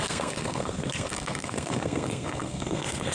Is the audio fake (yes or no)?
yes